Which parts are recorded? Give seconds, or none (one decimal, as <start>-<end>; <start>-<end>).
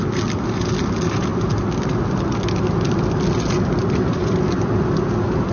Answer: 0.0-1.3; 4.4-5.5